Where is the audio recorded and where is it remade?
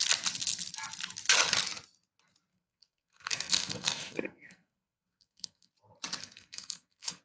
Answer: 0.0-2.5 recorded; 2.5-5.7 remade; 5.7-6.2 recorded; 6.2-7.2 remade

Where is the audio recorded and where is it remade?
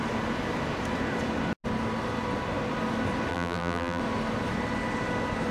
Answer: 0.0-3.3 recorded; 3.3-4.0 remade; 4.0-5.5 recorded